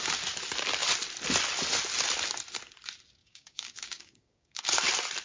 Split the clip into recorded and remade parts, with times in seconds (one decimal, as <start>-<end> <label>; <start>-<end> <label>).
0.0-3.2 recorded; 3.2-4.6 remade; 4.6-5.2 recorded